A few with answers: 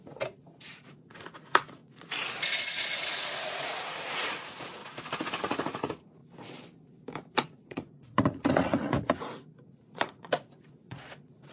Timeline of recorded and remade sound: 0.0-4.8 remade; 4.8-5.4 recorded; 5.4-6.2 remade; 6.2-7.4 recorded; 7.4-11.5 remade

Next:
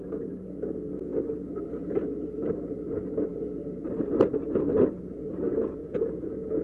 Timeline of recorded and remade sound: 0.0-5.5 recorded; 5.5-6.6 remade

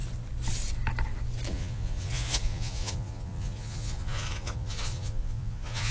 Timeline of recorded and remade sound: 0.0-1.5 recorded; 1.5-5.9 remade